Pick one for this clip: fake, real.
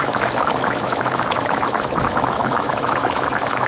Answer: fake